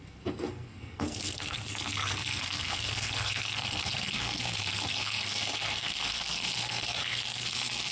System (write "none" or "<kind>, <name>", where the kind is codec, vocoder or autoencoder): codec, SNAC